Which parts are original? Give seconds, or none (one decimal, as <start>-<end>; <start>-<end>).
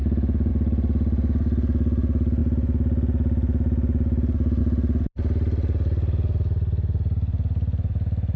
0.0-8.4